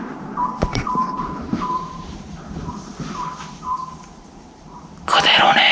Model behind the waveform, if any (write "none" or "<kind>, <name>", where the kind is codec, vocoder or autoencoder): vocoder, BigVGAN v2